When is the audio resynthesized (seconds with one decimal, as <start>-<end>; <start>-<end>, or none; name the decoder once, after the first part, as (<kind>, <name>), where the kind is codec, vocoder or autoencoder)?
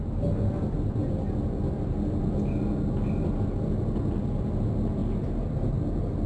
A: none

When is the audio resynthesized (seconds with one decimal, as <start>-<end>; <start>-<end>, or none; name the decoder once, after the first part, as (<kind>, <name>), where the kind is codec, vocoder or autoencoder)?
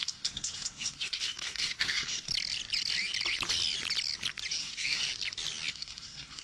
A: 0.0-2.3 (codec, SNAC); 4.6-5.0; 5.7-6.4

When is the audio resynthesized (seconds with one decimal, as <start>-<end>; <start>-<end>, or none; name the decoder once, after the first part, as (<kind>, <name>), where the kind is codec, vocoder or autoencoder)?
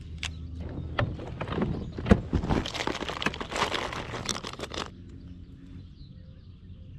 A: none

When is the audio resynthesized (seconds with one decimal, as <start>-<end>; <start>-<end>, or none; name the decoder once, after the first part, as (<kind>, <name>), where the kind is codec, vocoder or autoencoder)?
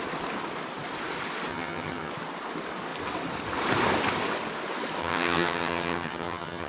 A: 1.5-2.1 (vocoder, HiFi-GAN); 5.0-6.7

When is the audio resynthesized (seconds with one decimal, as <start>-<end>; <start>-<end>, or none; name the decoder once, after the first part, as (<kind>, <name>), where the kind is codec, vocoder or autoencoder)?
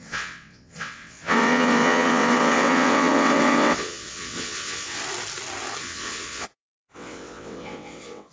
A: 0.0-5.0 (vocoder, WaveNeXt); 5.8-8.3